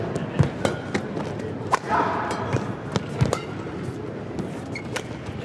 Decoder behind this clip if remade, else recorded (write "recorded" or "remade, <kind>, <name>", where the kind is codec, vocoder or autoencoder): recorded